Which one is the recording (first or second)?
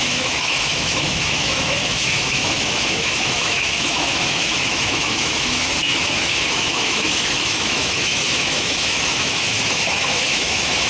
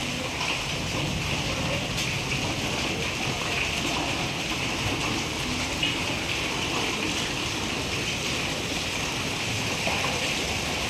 second